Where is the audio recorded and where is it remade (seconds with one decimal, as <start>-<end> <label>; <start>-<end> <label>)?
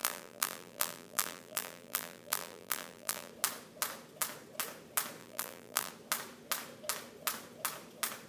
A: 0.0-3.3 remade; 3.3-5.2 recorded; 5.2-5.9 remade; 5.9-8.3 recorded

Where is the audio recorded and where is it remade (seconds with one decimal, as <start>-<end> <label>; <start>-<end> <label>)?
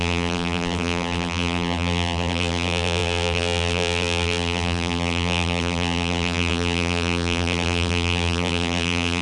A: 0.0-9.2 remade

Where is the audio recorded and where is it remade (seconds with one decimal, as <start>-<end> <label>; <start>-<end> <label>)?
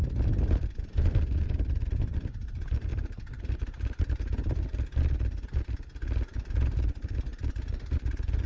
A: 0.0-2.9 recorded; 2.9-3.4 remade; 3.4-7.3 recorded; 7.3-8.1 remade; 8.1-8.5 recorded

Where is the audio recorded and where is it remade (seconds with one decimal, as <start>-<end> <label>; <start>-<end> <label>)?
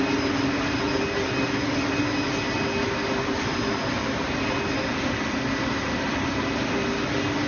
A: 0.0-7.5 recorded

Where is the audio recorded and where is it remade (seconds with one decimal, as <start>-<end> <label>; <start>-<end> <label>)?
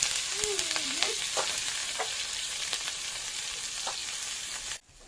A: 0.0-1.8 recorded; 1.8-3.0 remade; 3.0-5.1 recorded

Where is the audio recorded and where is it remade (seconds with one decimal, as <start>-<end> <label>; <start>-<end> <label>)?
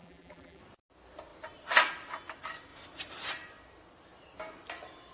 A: 0.0-0.6 remade; 0.6-5.1 recorded